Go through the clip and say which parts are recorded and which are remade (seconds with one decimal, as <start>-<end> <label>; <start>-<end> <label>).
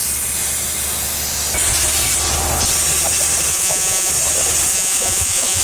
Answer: 0.0-3.5 recorded; 3.5-4.1 remade; 4.1-4.7 recorded; 4.7-5.6 remade